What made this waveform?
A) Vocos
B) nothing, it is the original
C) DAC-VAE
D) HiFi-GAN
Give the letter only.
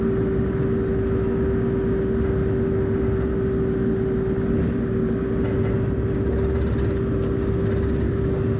B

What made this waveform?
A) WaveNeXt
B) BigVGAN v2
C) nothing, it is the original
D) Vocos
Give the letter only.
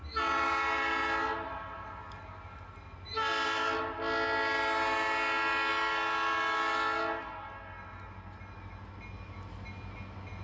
C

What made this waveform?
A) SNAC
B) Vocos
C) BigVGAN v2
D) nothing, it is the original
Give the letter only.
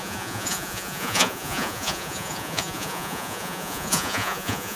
B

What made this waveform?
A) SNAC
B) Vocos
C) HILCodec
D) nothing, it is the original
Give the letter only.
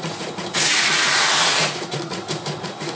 B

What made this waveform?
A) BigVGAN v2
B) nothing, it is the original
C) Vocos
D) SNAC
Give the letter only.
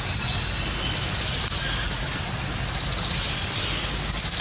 B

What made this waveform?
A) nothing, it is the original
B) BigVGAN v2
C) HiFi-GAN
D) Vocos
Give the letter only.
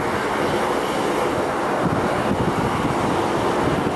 A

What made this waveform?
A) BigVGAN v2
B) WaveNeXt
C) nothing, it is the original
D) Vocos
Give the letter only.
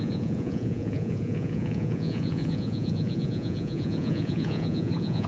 D